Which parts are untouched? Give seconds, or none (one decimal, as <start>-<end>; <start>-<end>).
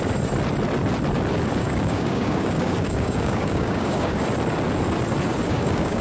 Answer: 0.0-1.6; 4.2-5.3